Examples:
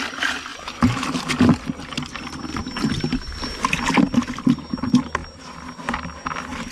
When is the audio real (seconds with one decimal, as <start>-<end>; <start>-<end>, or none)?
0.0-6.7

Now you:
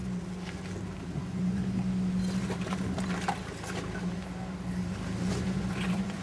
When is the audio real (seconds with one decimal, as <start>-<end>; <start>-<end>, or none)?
0.0-1.1; 1.6-5.3

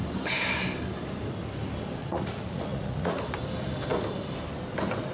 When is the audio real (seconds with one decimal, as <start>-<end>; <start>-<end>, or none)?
0.0-2.0; 3.2-5.1